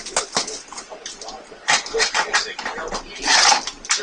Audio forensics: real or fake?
real